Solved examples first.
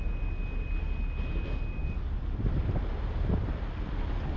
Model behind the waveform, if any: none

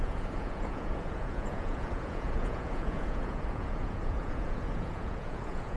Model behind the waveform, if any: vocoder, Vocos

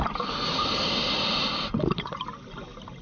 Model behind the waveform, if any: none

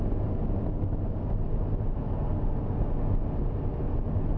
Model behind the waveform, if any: none